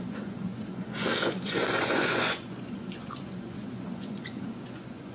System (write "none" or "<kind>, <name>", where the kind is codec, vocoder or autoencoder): vocoder, Vocos